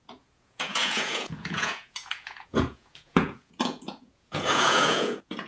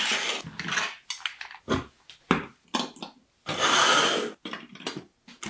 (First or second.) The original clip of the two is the second